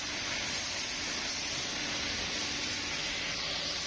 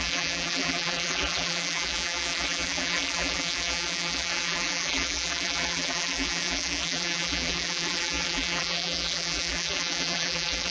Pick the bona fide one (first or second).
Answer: first